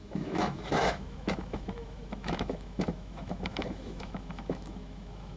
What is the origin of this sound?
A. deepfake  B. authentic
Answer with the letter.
A